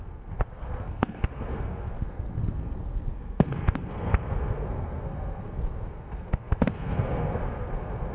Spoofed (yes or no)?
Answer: yes